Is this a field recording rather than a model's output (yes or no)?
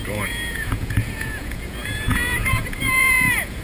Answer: no